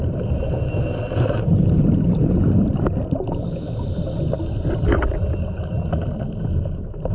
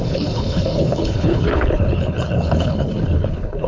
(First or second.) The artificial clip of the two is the second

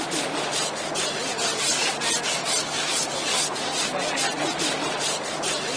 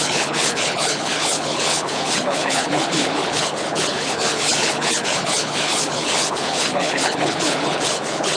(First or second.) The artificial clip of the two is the second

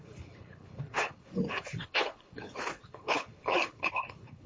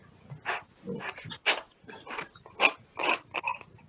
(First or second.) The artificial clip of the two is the first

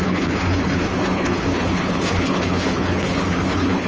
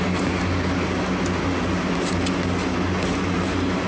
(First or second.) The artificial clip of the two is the first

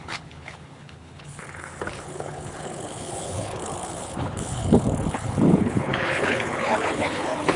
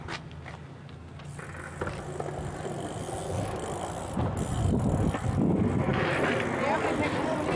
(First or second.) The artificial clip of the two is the first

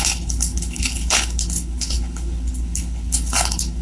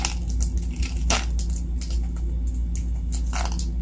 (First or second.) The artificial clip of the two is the first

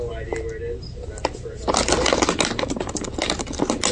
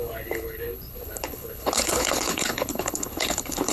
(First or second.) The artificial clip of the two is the second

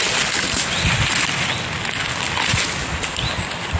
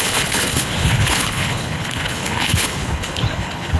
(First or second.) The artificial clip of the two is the second